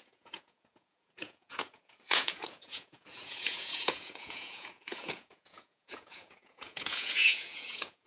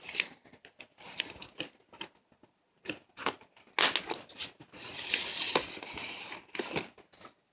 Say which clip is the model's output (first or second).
first